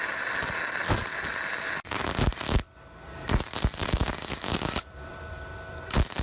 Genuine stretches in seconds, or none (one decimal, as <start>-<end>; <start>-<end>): 0.0-3.7; 5.8-6.2